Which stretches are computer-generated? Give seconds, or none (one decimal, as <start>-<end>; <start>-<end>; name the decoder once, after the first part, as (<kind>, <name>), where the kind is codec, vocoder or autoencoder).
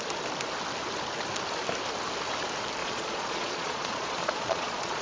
2.8-5.0 (vocoder, Vocos)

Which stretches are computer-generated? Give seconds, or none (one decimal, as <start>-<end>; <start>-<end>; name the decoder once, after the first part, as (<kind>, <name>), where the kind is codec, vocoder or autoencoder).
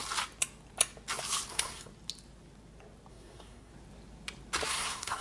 1.5-1.9 (codec, SNAC); 3.1-3.7; 4.7-5.2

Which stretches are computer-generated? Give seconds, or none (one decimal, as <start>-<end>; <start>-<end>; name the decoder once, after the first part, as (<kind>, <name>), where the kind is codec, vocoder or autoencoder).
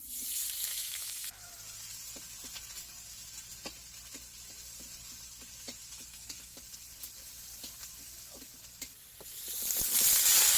0.7-1.5 (autoencoder, DAC-VAE); 5.8-6.6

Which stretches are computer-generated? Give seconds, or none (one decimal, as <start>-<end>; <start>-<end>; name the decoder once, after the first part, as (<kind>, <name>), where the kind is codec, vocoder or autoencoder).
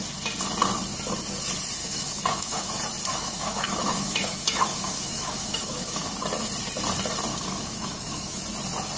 1.8-2.7 (autoencoder, DAC-VAE); 3.1-6.1; 7.3-8.4